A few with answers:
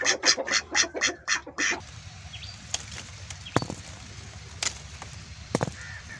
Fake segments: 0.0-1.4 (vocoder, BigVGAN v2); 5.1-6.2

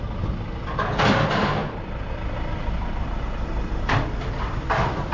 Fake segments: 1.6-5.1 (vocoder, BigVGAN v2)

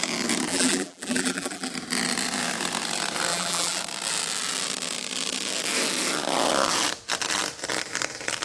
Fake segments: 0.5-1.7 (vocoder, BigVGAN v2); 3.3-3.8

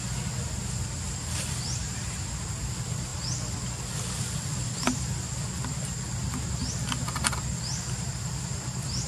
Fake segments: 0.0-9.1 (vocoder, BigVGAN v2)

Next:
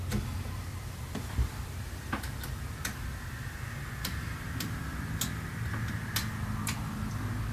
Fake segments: 0.7-5.2 (vocoder, BigVGAN v2)